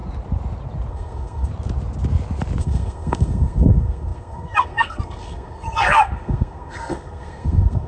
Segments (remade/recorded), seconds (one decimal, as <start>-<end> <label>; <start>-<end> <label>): 0.0-0.9 recorded; 0.9-1.5 remade; 1.5-2.6 recorded; 2.6-7.9 remade